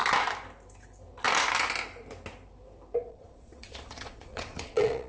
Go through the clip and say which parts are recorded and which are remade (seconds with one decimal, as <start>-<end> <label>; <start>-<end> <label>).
0.0-3.1 recorded; 3.1-5.1 remade